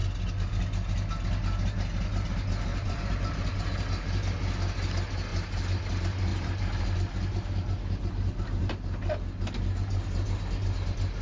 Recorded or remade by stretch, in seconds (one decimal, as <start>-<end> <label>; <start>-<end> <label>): 0.0-2.7 recorded; 2.7-3.6 remade; 3.6-6.3 recorded; 6.3-8.7 remade; 8.7-11.2 recorded